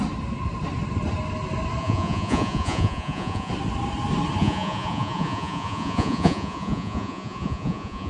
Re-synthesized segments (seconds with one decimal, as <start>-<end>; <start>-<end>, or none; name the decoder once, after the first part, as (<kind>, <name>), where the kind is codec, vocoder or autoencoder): 1.8-3.5 (vocoder, Vocos); 4.4-8.1